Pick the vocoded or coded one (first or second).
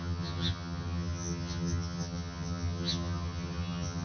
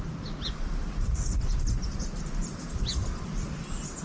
first